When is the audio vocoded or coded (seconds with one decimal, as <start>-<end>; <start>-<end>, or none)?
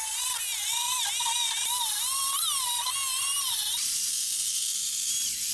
4.1-5.1